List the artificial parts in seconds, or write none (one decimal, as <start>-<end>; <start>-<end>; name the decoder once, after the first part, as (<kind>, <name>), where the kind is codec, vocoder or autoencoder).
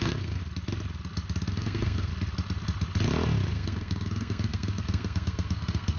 0.0-0.4 (codec, SNAC); 1.5-2.1; 3.5-6.0